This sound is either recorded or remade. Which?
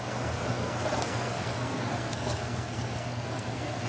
remade